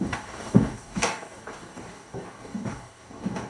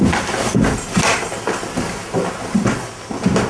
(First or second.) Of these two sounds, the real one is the second